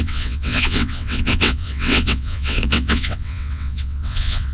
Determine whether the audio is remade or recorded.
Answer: remade